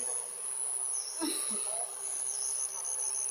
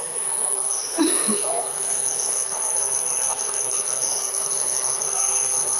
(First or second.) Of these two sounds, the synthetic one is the second